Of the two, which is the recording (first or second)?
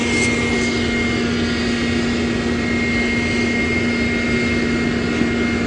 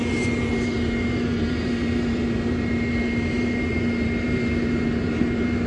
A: first